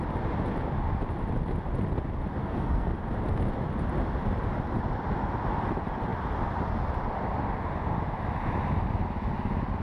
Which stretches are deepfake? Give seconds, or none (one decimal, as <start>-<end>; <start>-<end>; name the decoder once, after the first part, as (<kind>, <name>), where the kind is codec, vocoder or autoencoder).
2.4-2.9 (codec, SNAC)